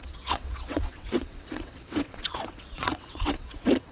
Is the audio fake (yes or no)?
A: yes